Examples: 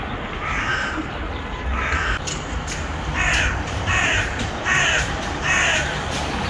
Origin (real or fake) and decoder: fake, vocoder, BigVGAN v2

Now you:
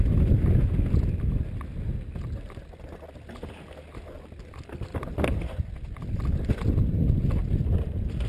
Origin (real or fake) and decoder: real